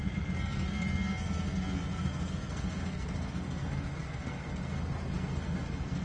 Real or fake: fake